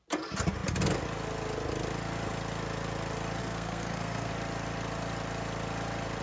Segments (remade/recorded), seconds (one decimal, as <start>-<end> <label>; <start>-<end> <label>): 0.0-3.4 recorded; 3.4-4.3 remade; 4.3-6.2 recorded